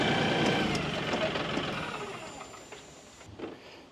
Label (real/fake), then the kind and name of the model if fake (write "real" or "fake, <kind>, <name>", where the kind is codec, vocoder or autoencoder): real